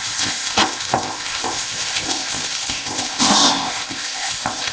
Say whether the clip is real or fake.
fake